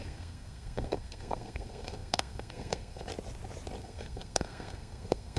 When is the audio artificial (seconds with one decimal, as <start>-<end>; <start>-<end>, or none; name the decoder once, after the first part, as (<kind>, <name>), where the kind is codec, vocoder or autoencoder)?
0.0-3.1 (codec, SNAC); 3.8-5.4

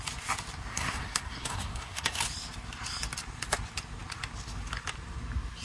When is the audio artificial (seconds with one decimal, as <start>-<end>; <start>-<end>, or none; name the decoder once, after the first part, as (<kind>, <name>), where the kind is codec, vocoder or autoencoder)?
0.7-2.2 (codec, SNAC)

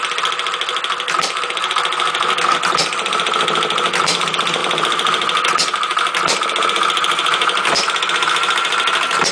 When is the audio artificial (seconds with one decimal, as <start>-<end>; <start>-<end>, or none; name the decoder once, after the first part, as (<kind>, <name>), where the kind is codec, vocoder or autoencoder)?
none